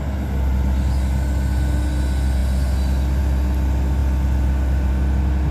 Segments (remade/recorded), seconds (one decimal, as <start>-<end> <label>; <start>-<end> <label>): 0.0-5.5 recorded